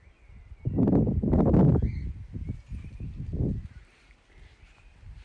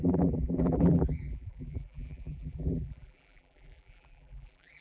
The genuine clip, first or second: first